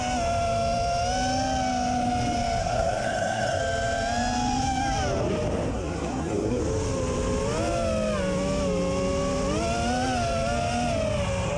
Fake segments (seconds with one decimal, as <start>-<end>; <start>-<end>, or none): 2.6-3.6; 5.7-6.6